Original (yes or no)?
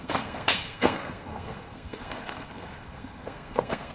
no